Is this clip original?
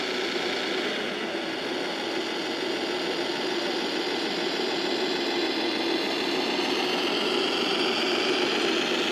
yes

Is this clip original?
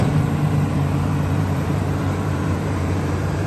no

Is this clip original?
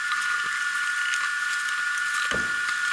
yes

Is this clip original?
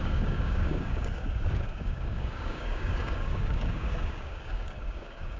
no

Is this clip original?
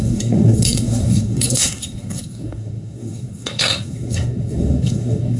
no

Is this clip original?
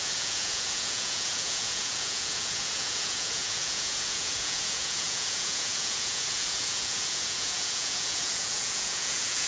no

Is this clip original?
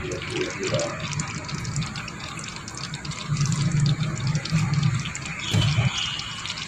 yes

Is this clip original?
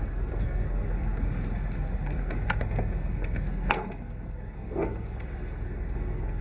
no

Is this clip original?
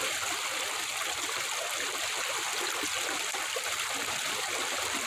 yes